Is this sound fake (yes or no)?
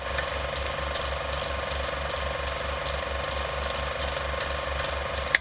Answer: no